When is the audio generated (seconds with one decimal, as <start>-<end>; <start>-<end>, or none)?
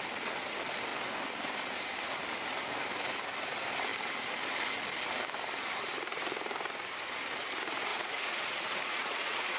7.9-9.6